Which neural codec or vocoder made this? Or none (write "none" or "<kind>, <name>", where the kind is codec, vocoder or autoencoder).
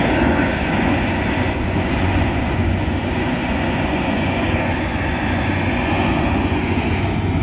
vocoder, Vocos